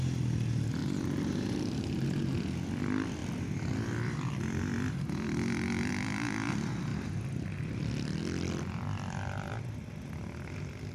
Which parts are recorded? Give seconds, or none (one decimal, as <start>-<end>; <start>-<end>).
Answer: 0.0-0.8; 2.3-6.9; 7.8-10.9